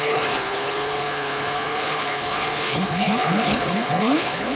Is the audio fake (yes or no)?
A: yes